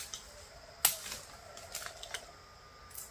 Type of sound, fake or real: real